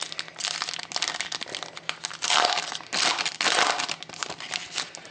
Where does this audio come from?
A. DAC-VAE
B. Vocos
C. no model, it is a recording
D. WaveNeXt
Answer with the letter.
C